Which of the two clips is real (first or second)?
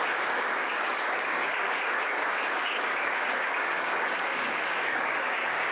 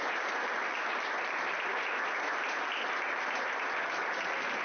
second